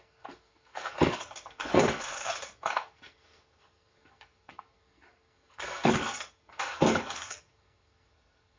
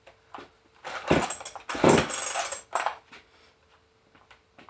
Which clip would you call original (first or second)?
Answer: second